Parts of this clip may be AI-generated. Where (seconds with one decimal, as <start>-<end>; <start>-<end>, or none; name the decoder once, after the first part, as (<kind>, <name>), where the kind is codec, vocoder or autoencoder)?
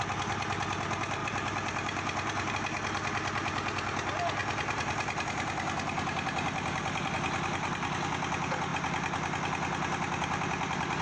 1.2-2.5 (vocoder, BigVGAN v2)